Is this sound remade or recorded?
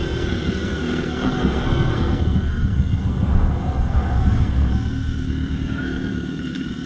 remade